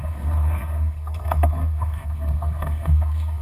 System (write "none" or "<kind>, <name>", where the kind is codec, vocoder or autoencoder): codec, SNAC